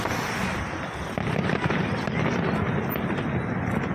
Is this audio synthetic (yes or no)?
no